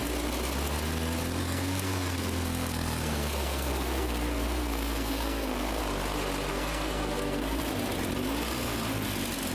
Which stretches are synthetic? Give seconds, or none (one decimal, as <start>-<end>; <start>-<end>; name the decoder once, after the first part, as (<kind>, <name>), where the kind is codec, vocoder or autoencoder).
1.4-5.8 (codec, SNAC); 6.5-7.6